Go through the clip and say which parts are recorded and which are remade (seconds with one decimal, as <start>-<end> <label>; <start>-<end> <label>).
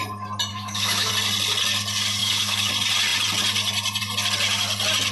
0.0-0.5 recorded; 0.5-1.1 remade; 1.1-2.2 recorded; 2.2-2.7 remade; 2.7-5.1 recorded